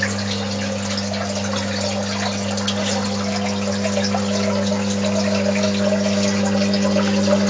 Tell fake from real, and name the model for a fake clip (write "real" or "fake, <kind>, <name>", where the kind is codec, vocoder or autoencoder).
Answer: real